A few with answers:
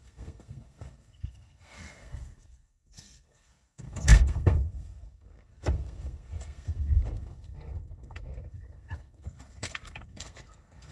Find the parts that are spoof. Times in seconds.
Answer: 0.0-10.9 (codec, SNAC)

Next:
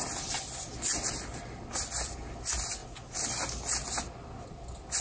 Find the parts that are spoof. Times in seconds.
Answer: none

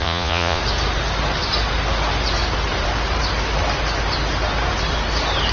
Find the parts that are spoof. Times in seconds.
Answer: 0.0-0.6 (vocoder, Vocos)

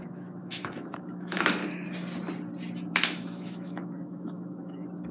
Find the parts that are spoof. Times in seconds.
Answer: 0.0-1.6 (autoencoder, DAC-VAE); 2.9-5.1

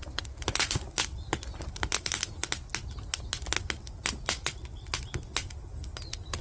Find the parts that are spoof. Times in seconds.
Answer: none

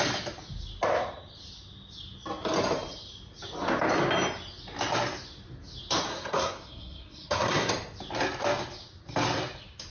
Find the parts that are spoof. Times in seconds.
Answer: 6.1-7.7 (codec, SNAC)

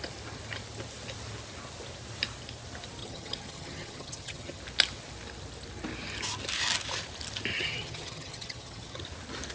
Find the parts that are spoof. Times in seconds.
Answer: 3.0-4.6 (vocoder, HiFi-GAN); 7.5-9.0

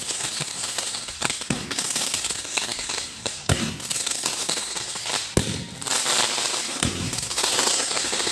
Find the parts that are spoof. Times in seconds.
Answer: 0.0-5.1 (codec, SNAC); 6.6-8.3